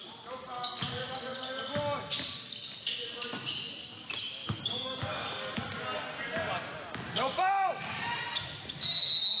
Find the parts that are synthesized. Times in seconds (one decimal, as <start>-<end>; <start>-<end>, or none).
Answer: 4.4-5.1

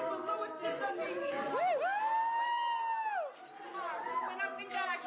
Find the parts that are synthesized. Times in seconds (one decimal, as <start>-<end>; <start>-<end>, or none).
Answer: none

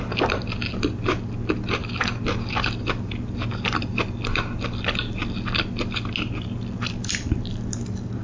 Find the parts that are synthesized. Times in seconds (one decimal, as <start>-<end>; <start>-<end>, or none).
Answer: none

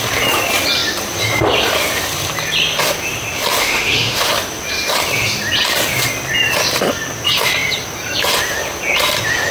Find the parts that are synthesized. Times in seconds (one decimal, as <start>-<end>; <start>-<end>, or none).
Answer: 3.6-4.3

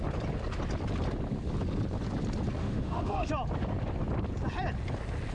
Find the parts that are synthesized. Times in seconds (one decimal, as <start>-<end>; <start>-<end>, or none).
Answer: 2.6-3.3

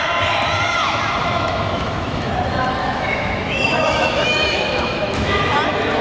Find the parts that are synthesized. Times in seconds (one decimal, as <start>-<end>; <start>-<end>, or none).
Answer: 1.2-2.3; 2.8-5.4

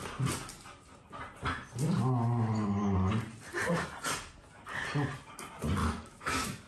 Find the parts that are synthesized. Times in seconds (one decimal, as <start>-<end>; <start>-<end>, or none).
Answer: 5.8-6.7

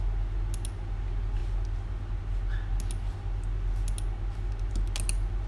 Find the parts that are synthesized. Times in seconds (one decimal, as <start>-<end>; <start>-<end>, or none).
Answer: none